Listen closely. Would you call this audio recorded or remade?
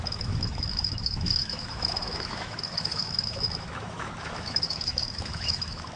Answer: remade